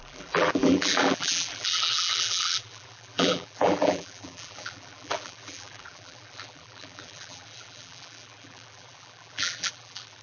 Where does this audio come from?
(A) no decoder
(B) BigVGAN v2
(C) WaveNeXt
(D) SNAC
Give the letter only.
B